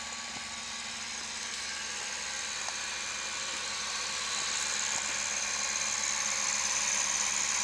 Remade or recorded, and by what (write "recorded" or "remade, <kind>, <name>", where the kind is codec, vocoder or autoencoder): recorded